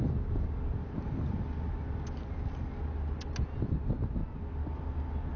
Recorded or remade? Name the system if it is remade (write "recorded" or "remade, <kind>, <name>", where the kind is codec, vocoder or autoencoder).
recorded